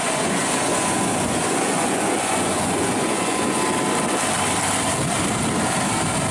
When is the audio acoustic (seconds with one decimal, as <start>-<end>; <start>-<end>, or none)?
3.6-6.3